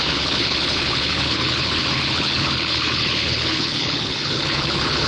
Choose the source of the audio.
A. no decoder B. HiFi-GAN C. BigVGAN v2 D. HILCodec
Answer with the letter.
D